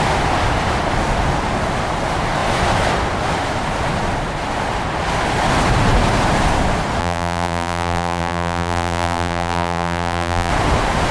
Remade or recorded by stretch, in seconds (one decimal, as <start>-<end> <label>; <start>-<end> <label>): 0.0-7.0 recorded; 7.0-10.5 remade; 10.5-11.1 recorded